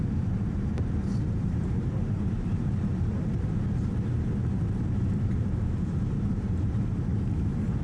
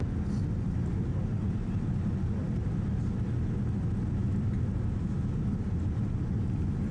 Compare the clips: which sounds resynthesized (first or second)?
first